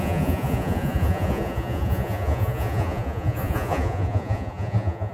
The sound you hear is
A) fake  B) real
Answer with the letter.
A